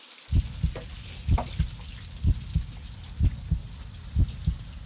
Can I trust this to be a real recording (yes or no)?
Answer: yes